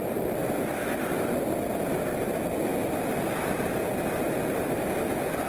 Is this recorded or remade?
recorded